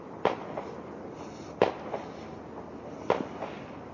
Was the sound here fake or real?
real